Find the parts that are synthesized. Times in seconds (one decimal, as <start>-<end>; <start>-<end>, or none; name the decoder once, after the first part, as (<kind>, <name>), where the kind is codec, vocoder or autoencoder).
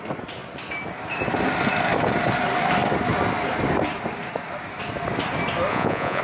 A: 5.7-6.2 (vocoder, Vocos)